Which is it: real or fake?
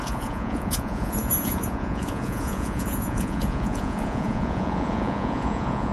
fake